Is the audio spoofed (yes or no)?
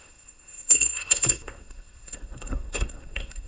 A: yes